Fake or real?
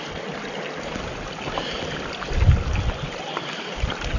real